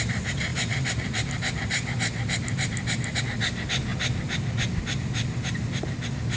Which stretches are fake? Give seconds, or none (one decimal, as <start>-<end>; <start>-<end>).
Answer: none